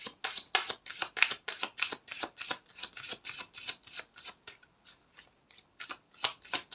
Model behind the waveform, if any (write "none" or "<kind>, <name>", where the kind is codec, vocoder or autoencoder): none